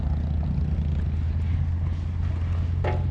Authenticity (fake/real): real